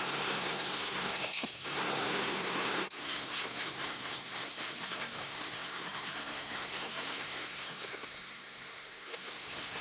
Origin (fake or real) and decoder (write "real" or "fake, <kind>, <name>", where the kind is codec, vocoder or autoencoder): fake, codec, SNAC